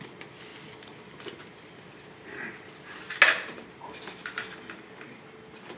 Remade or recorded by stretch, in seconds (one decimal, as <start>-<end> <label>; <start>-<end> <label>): 0.0-5.8 recorded